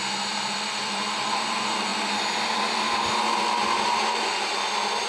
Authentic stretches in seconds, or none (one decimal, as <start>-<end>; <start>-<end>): 0.0-5.1